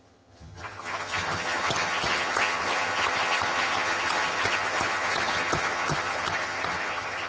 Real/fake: fake